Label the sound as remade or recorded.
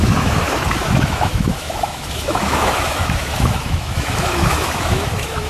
remade